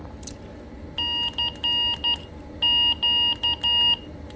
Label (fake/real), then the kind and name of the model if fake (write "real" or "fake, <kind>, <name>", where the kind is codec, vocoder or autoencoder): real